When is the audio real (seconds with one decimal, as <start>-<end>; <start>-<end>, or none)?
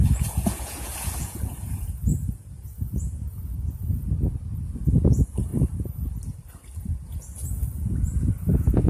5.5-7.7